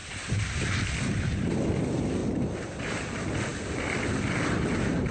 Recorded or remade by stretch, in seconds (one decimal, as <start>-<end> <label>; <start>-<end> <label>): 0.0-2.2 remade; 2.2-2.8 recorded; 2.8-3.5 remade; 3.5-4.2 recorded; 4.2-5.1 remade